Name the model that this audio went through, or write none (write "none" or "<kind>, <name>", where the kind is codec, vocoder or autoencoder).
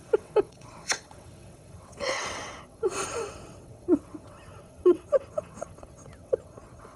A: vocoder, WaveNeXt